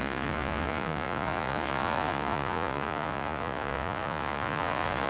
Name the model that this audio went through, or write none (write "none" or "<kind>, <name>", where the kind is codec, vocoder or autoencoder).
vocoder, Vocos